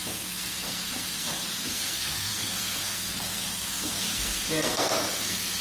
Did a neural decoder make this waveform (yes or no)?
yes